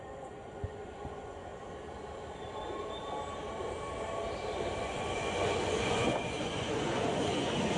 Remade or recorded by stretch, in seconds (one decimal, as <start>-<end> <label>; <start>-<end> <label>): 0.0-1.5 remade; 1.5-4.8 recorded; 4.8-7.8 remade